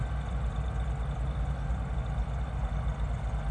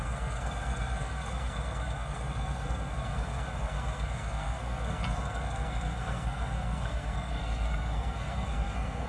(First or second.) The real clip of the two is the first